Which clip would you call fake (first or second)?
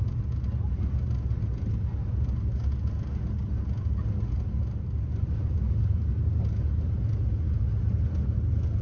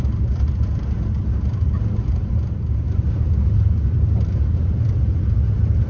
second